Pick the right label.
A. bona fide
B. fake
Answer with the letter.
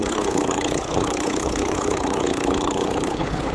B